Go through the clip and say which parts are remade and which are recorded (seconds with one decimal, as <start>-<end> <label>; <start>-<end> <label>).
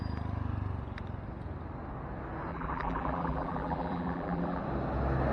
0.0-2.5 recorded; 2.5-4.6 remade; 4.6-5.3 recorded